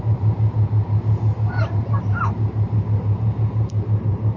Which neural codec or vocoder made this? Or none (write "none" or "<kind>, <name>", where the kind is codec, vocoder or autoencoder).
vocoder, BigVGAN v2